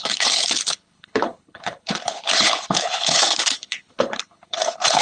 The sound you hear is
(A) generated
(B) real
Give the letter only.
A